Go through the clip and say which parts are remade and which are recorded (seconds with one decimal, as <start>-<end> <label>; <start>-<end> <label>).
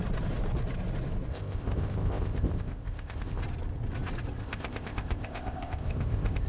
0.0-1.3 recorded; 1.3-3.4 remade; 3.4-4.4 recorded; 4.4-6.5 remade